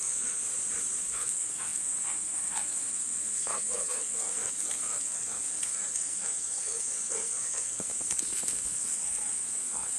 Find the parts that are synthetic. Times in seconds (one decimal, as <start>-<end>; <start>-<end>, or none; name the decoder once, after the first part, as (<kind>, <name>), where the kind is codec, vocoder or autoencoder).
0.0-0.4 (codec, SNAC); 1.0-10.0